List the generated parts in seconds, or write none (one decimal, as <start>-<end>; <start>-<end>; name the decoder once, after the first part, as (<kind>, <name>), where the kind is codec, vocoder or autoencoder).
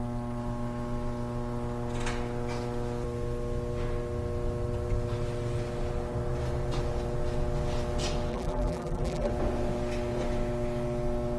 8.3-9.3 (vocoder, BigVGAN v2)